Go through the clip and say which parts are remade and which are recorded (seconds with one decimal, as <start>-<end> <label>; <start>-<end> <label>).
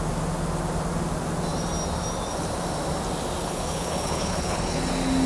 0.0-3.4 recorded; 3.4-4.8 remade; 4.8-5.3 recorded